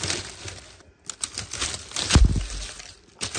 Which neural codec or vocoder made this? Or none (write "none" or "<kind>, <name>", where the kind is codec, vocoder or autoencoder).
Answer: none